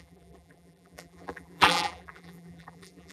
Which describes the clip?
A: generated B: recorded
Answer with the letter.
A